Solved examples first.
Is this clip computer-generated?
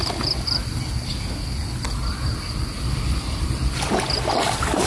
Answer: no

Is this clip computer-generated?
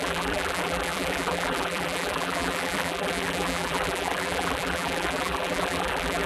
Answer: yes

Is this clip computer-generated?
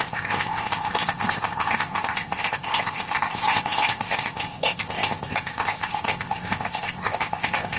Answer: yes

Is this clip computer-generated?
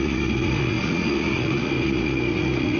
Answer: yes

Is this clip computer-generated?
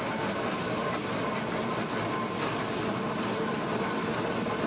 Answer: no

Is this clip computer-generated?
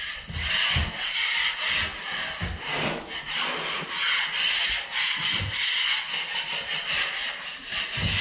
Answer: no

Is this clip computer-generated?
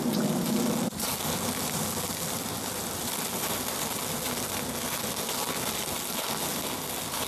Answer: no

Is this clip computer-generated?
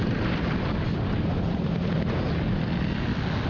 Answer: no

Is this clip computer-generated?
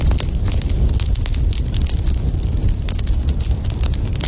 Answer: no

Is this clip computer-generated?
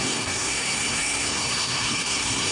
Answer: yes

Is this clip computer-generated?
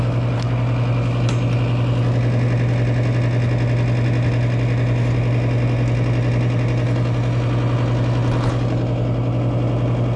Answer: no